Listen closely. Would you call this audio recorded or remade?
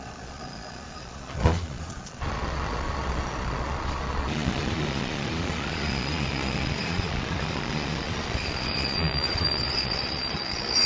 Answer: remade